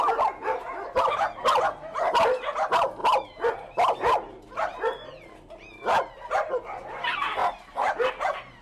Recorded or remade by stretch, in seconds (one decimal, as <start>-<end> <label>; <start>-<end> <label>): 0.0-8.6 recorded